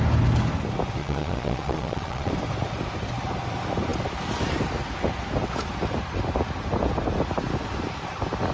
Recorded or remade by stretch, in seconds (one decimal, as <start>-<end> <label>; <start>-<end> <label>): 0.0-1.0 recorded; 1.0-2.3 remade; 2.3-8.5 recorded